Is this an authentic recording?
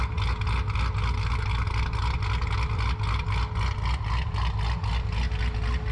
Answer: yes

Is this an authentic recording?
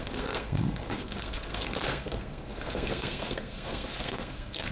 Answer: no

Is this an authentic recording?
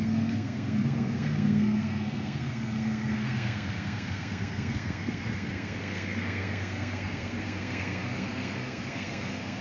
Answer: no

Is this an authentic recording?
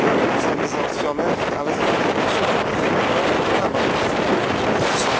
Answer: yes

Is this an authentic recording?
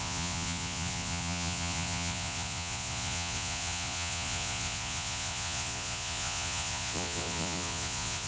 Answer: no